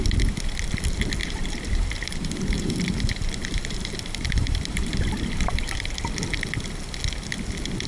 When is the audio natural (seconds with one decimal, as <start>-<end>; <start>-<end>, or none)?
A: 0.0-1.2; 5.9-7.9